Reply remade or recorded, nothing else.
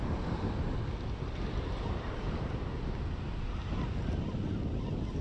recorded